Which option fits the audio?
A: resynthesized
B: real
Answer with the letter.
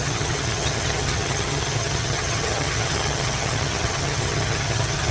A